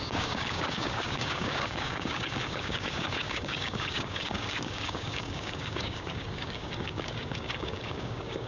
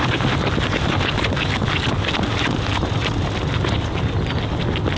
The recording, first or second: second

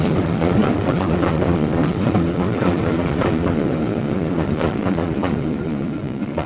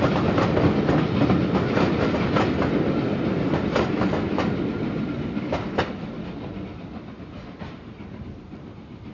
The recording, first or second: second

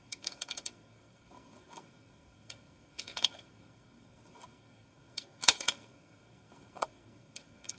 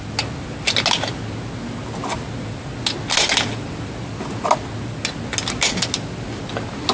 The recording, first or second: second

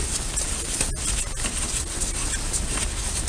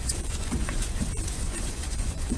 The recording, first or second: first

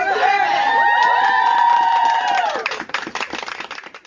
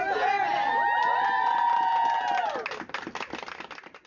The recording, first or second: second